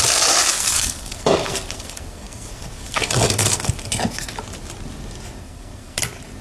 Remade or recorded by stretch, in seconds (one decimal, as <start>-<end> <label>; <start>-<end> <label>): 0.0-0.5 recorded; 0.5-4.3 remade; 4.3-5.4 recorded; 5.4-6.0 remade; 6.0-6.4 recorded